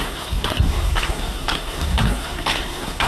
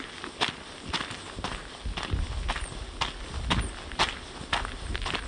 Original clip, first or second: second